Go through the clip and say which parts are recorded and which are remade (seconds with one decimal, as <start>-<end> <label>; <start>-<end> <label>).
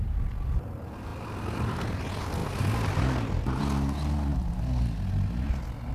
0.0-5.9 recorded